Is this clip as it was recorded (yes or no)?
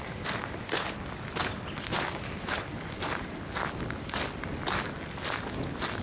yes